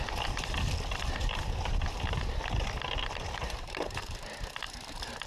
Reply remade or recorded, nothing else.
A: remade